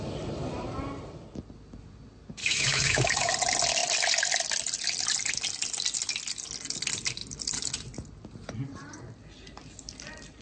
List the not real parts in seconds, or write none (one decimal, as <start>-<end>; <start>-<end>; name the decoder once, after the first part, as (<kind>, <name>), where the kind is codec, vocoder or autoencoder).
2.4-3.3 (autoencoder, DAC-VAE)